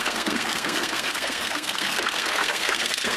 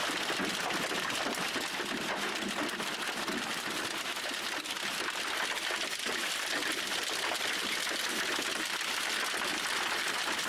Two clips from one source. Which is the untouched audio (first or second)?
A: second